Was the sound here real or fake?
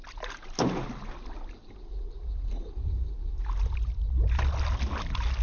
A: real